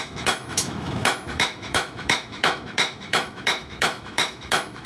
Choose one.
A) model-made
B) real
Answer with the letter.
A